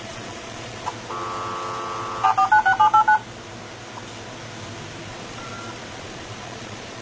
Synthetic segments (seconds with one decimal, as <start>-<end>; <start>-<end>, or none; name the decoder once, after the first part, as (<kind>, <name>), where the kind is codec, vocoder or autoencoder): 0.0-0.9 (vocoder, Vocos); 5.1-5.5; 6.0-7.0